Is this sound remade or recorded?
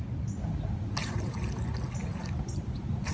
recorded